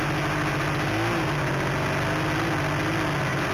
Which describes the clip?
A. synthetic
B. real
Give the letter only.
B